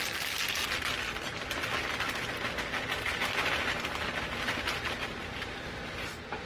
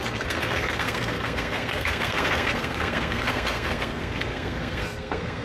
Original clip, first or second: first